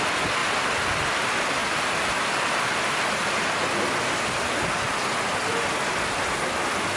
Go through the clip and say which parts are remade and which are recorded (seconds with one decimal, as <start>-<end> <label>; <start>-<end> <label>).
0.0-0.4 recorded; 0.4-1.1 remade; 1.1-7.0 recorded